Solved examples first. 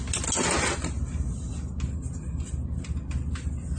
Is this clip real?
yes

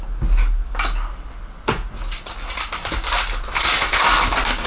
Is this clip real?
yes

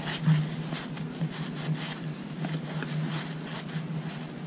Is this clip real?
yes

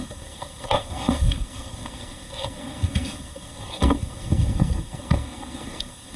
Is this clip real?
no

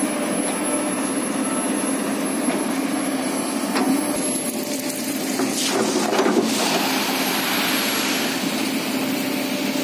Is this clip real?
yes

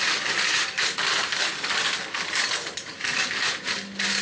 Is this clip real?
yes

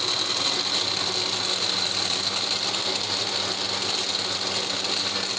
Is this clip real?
yes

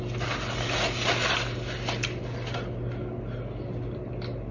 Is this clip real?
yes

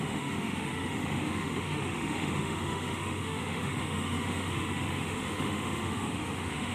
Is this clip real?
no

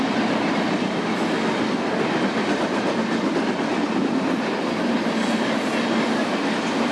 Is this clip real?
yes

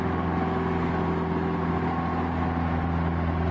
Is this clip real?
yes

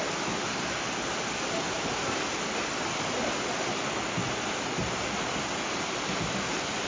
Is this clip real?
yes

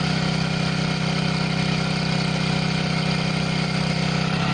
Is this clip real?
yes